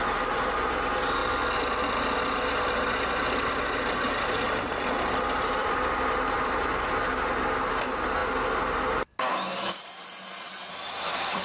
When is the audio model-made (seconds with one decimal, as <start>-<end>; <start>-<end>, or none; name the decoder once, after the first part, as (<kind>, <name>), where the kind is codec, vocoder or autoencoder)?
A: 5.6-6.7 (vocoder, BigVGAN v2)